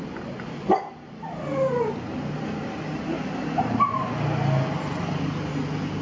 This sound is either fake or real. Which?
real